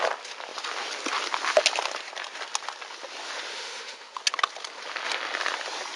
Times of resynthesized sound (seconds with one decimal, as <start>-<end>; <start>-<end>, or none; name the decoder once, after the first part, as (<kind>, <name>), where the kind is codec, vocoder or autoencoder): 3.5-4.2 (autoencoder, DAC-VAE)